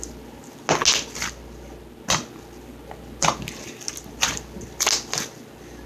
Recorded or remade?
recorded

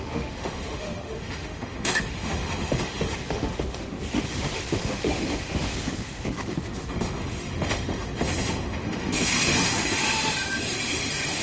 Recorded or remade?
remade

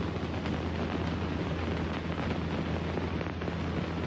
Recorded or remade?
recorded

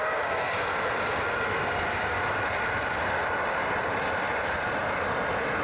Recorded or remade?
recorded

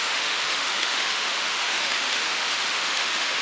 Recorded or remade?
remade